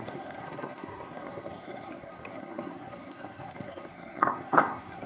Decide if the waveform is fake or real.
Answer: fake